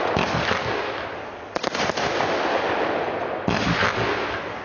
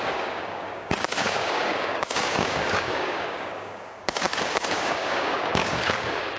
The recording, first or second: first